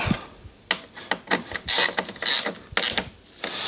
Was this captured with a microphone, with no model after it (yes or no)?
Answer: yes